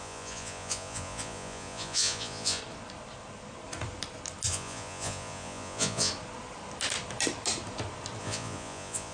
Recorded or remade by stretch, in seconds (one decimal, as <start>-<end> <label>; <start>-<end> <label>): 0.0-2.6 remade; 2.6-4.5 recorded; 4.5-6.1 remade; 6.1-8.2 recorded; 8.2-9.1 remade